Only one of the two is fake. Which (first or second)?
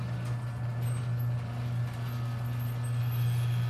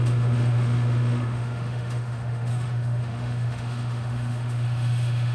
second